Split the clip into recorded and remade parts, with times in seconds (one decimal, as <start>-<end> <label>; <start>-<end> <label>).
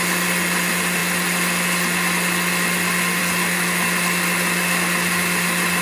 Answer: 0.0-5.8 recorded